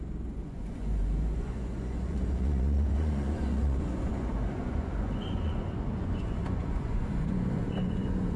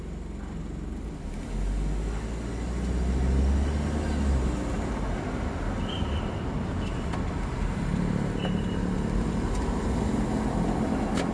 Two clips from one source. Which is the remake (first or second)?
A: first